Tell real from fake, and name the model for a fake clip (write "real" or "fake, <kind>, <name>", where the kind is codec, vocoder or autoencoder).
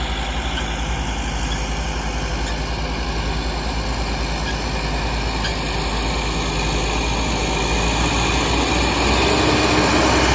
real